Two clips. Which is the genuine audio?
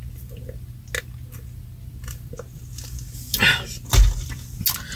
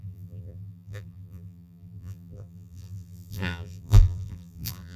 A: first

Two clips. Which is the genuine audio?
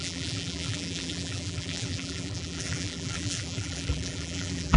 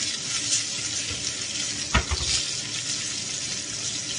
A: second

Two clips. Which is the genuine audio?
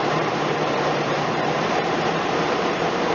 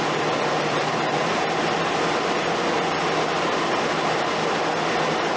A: second